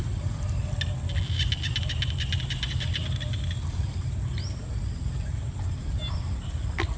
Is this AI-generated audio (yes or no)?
no